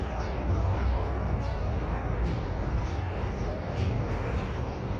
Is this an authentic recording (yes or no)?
no